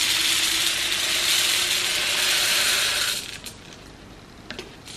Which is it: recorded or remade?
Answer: recorded